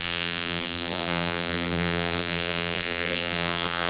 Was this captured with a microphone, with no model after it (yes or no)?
no